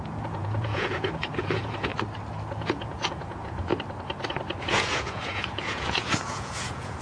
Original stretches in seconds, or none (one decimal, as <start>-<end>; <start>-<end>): 1.9-2.5; 3.7-4.6